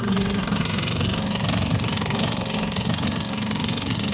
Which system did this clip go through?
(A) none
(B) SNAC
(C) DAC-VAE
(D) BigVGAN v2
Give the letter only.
B